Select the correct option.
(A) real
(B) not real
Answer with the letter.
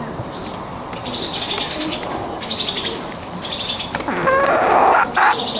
A